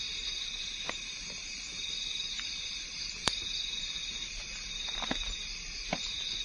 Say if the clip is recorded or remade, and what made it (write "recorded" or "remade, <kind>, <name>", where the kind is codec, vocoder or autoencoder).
remade, vocoder, BigVGAN v2